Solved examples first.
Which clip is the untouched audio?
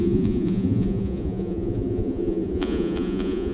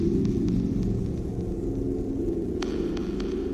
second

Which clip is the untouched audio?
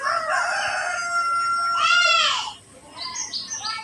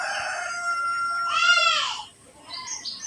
first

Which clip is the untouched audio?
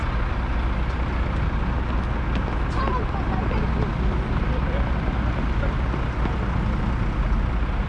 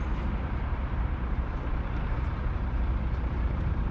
first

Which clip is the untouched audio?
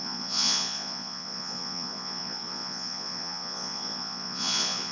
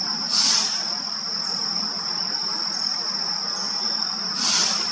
second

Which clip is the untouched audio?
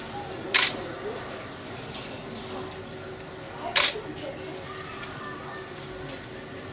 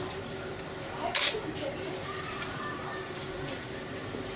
first